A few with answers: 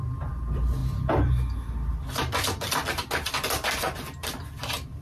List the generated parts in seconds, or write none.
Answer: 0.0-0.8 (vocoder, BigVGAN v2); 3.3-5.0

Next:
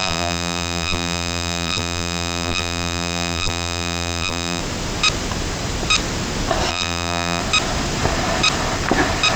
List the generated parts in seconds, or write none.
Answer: 0.0-4.6 (vocoder, BigVGAN v2); 6.7-7.4

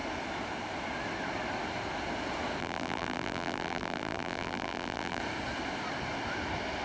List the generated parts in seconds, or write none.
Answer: 2.6-5.2 (vocoder, BigVGAN v2)

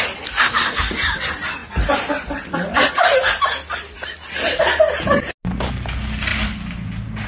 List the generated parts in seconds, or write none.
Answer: 6.3-7.3 (vocoder, BigVGAN v2)

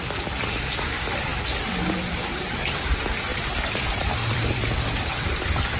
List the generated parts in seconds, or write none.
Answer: 0.0-5.8 (vocoder, BigVGAN v2)

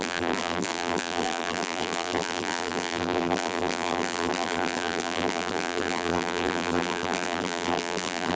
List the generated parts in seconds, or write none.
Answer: 0.0-8.3 (vocoder, BigVGAN v2)

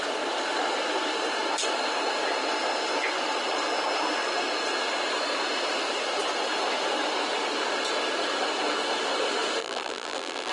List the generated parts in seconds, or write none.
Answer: 9.6-10.5 (vocoder, BigVGAN v2)

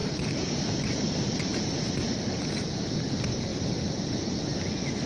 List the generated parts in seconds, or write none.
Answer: 0.0-1.1 (vocoder, BigVGAN v2); 1.5-2.8; 3.5-4.4